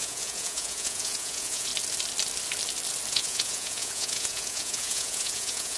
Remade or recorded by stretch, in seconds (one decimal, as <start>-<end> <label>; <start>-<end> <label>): 0.0-1.7 remade; 1.7-3.1 recorded; 3.1-5.8 remade